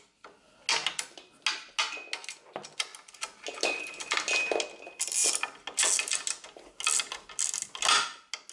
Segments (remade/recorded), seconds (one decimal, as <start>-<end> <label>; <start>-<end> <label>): 0.0-8.5 recorded